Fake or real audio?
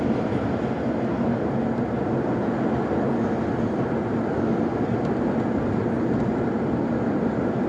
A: real